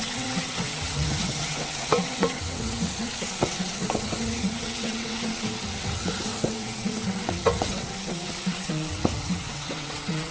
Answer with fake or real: fake